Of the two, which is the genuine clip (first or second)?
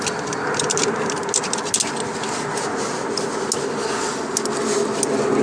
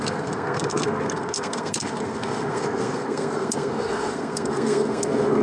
first